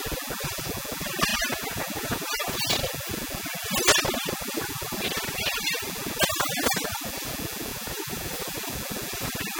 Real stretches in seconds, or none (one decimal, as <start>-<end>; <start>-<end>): 0.0-1.3; 2.8-7.7; 8.3-9.6